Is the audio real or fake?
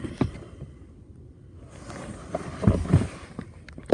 fake